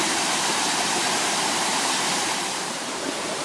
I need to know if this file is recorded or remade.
remade